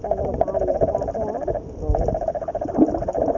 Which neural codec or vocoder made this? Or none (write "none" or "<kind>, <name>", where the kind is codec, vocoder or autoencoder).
none